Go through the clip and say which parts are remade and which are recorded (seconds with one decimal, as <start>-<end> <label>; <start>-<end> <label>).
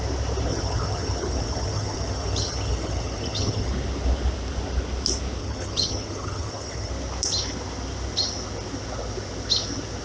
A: 0.0-0.5 recorded; 0.5-3.7 remade; 3.7-5.4 recorded; 5.4-6.9 remade; 6.9-10.0 recorded